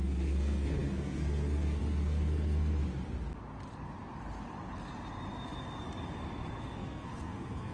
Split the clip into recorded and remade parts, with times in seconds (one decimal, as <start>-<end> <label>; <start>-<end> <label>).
0.0-2.8 remade; 2.8-6.6 recorded; 6.6-7.7 remade